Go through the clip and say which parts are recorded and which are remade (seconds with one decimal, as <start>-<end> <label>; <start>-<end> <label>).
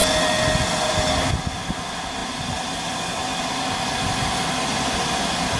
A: 0.0-5.6 recorded